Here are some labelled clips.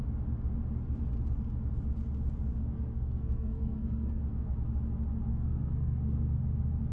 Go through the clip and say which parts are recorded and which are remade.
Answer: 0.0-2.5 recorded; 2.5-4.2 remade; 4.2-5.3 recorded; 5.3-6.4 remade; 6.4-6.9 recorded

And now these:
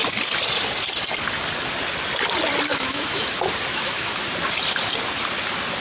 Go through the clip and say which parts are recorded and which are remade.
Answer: 0.0-2.7 recorded; 2.7-3.3 remade; 3.3-3.7 recorded; 3.7-4.2 remade; 4.2-5.8 recorded

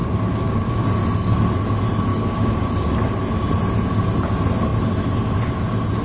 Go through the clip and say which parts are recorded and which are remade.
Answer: 0.0-0.8 remade; 0.8-2.1 recorded; 2.1-2.7 remade; 2.7-6.0 recorded